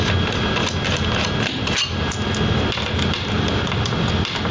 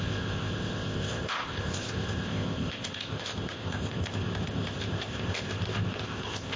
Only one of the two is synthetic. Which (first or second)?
second